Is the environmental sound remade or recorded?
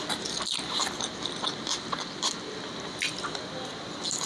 recorded